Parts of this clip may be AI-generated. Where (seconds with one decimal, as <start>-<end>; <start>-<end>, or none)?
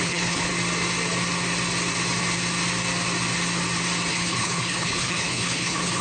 0.0-0.5; 4.1-6.0